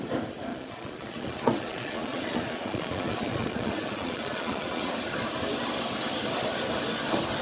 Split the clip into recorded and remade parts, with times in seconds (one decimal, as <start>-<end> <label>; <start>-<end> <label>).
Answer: 0.0-0.5 recorded; 0.5-4.9 remade; 4.9-7.4 recorded